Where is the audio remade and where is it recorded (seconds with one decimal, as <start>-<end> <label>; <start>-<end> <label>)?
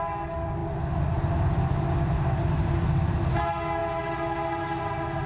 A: 0.0-5.3 recorded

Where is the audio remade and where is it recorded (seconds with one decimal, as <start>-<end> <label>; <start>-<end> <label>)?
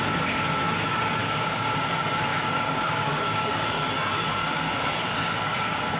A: 0.0-1.2 recorded; 1.2-1.7 remade; 1.7-2.3 recorded; 2.3-6.0 remade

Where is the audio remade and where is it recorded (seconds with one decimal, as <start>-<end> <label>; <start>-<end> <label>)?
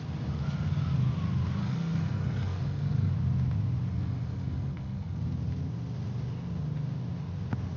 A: 0.0-1.6 recorded; 1.6-3.1 remade; 3.1-3.9 recorded; 3.9-5.2 remade; 5.2-7.8 recorded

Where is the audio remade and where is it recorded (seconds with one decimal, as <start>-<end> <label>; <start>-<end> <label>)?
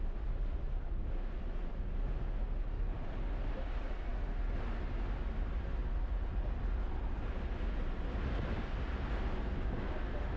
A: 0.0-10.4 recorded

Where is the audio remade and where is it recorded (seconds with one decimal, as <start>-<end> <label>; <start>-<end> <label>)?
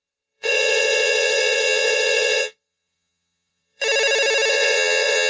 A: 0.0-3.8 remade; 3.8-4.5 recorded; 4.5-5.3 remade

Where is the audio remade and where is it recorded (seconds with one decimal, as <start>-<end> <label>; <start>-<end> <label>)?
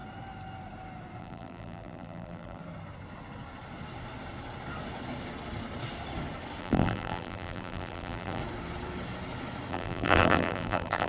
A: 0.0-1.2 recorded; 1.2-2.6 remade; 2.6-6.6 recorded; 6.6-8.4 remade; 8.4-9.7 recorded; 9.7-11.1 remade